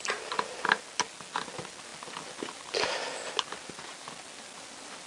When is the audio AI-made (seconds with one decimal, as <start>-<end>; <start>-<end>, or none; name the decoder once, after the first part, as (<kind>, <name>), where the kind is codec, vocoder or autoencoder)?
none